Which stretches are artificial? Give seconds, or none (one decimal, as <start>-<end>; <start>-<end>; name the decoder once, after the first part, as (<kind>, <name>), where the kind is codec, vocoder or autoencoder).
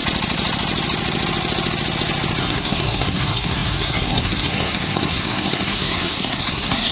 2.4-6.9 (codec, SNAC)